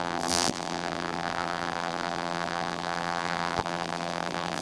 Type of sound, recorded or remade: remade